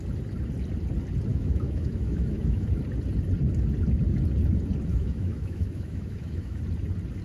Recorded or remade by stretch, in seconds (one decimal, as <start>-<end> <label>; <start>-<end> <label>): 0.0-1.3 recorded; 1.3-2.7 remade; 2.7-4.9 recorded; 4.9-6.6 remade; 6.6-7.2 recorded